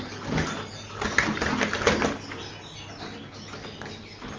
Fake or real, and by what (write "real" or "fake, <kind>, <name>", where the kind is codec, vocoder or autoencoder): real